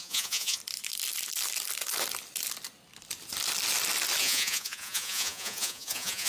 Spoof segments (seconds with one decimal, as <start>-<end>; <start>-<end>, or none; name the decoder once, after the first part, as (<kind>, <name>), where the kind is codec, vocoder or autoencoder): 0.0-0.6 (vocoder, Vocos); 4.2-6.3